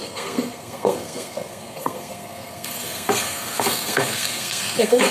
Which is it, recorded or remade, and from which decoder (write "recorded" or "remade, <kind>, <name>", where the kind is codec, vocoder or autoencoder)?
remade, codec, SNAC